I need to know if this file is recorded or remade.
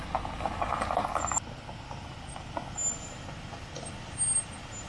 recorded